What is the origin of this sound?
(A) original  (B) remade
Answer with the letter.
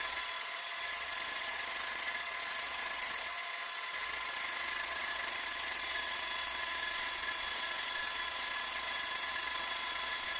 B